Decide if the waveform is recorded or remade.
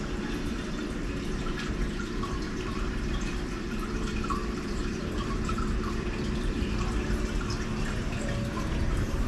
remade